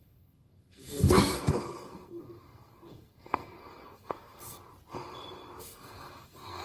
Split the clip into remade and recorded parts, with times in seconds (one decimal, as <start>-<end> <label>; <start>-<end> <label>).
0.0-4.6 remade; 4.6-5.6 recorded; 5.6-6.6 remade